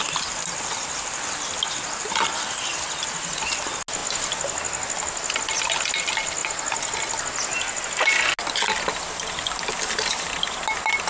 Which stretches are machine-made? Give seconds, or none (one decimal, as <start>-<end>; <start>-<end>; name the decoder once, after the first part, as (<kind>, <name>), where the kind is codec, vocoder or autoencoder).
none